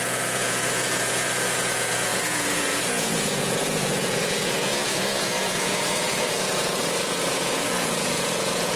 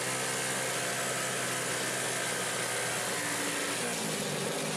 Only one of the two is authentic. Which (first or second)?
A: second